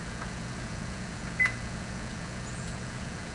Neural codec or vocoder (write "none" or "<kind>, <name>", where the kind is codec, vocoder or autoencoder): vocoder, Vocos